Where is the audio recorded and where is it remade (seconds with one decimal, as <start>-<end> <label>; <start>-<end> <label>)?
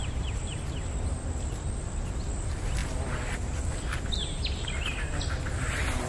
0.0-6.1 recorded